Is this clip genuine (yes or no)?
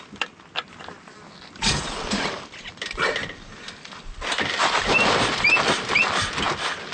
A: yes